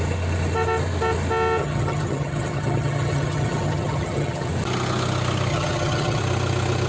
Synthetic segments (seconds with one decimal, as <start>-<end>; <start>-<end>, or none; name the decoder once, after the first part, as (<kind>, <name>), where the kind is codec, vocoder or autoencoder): 1.6-4.5 (vocoder, HiFi-GAN); 5.5-6.2